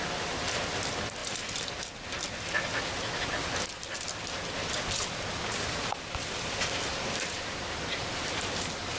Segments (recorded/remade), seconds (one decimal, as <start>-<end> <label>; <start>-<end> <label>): 0.0-9.0 recorded